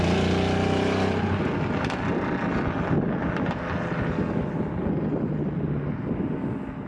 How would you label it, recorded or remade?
recorded